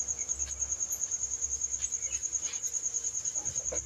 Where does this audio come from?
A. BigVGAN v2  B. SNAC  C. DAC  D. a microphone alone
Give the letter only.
A